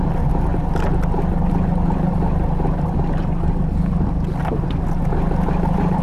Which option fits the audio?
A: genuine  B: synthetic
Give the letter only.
A